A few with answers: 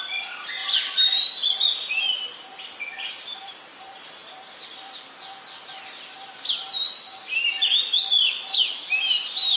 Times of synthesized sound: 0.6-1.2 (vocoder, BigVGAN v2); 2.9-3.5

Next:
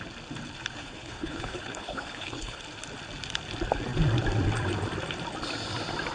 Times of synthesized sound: 0.8-2.6 (codec, HILCodec)